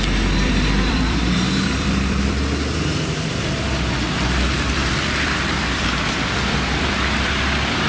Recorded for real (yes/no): no